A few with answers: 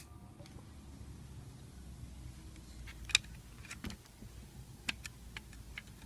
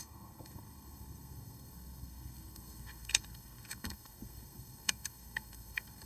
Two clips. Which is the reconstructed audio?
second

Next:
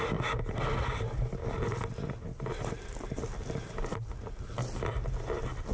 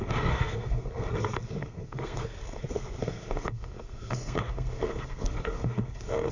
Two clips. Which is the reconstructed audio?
second